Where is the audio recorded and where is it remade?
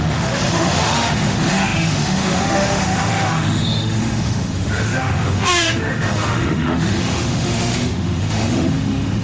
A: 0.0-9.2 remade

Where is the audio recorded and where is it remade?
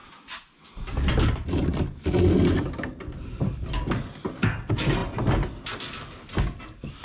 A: 0.0-7.0 recorded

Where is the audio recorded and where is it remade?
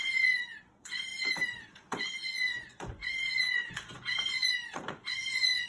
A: 0.0-5.7 remade